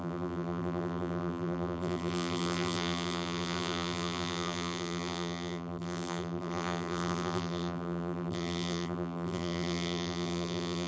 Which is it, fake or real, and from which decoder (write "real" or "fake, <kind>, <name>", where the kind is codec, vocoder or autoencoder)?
fake, vocoder, BigVGAN v2